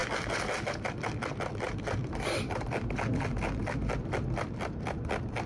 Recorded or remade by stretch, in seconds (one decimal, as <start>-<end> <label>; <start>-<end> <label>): 0.0-5.5 remade